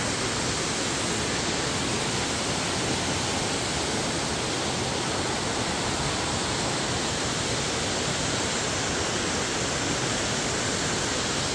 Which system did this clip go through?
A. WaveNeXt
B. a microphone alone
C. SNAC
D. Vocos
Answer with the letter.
B